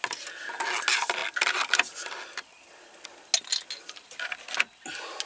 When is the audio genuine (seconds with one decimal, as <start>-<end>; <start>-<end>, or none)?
0.0-5.3